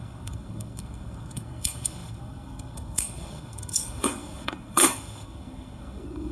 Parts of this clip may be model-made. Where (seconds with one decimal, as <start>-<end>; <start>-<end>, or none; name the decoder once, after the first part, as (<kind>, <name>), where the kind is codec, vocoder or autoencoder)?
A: 0.0-6.3 (codec, SNAC)